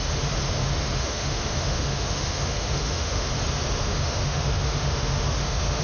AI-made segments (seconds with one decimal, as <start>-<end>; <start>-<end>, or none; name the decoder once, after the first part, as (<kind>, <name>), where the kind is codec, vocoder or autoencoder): 0.6-3.3 (autoencoder, DAC-VAE); 3.8-5.8